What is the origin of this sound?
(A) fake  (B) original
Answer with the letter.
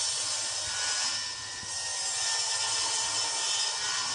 B